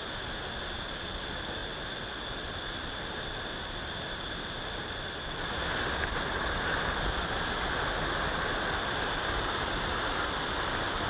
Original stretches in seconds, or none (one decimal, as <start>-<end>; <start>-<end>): 5.6-6.3